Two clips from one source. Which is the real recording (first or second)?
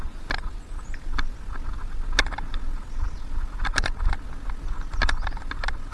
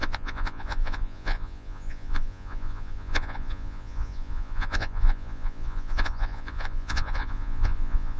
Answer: first